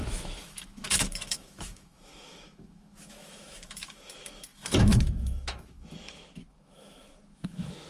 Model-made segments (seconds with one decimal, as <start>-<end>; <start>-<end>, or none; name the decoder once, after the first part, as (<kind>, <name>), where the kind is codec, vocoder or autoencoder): 0.0-7.9 (autoencoder, DAC-VAE)